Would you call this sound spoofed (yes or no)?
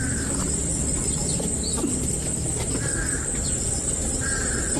yes